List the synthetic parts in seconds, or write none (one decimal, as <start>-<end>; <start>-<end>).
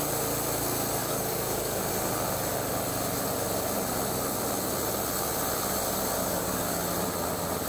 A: 1.0-1.9; 6.2-6.8